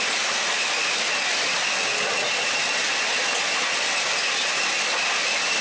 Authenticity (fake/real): real